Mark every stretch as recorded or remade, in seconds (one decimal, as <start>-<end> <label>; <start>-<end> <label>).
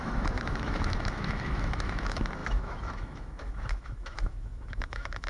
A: 0.0-5.3 remade